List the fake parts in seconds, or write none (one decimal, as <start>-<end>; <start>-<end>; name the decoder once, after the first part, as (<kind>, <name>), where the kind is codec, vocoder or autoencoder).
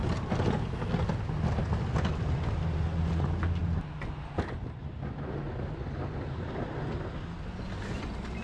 none